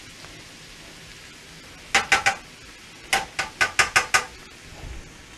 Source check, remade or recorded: recorded